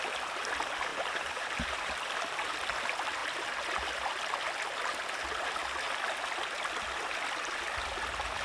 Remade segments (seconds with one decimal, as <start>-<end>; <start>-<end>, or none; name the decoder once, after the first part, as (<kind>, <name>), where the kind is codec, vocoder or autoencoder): 0.9-1.9 (vocoder, BigVGAN v2)